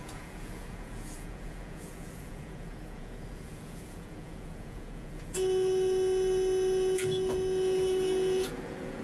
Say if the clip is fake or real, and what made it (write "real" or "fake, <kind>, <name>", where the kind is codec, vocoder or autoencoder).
fake, vocoder, Vocos